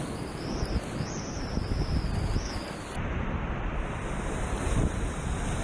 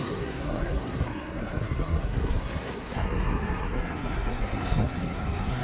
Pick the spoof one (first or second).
second